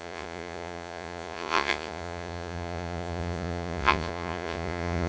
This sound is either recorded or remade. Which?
remade